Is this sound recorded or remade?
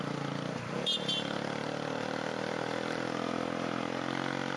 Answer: recorded